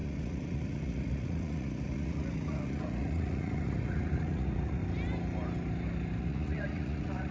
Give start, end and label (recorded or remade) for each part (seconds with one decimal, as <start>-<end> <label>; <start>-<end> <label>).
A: 0.0-4.8 remade; 4.8-6.2 recorded; 6.2-7.3 remade